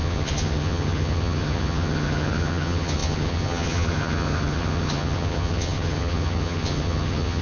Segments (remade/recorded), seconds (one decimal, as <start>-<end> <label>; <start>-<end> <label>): 0.0-7.4 remade